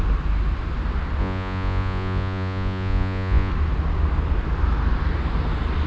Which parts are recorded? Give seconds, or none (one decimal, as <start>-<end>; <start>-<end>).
0.0-1.2; 3.5-5.9